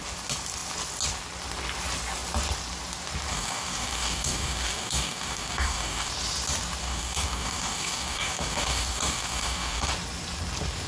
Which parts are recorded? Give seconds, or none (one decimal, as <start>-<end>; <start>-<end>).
0.0-3.3; 6.1-6.8; 9.9-10.9